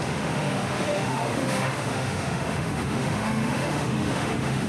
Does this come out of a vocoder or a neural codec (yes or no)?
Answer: yes